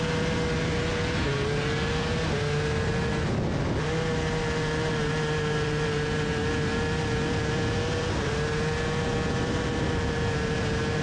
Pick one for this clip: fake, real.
real